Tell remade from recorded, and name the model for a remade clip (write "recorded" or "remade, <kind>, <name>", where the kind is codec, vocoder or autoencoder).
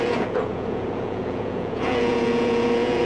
remade, vocoder, Vocos